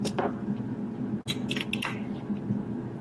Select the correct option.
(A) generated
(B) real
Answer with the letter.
B